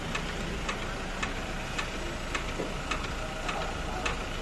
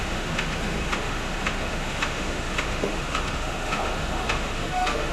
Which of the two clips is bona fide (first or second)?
first